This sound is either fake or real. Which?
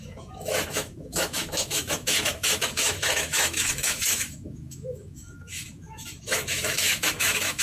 fake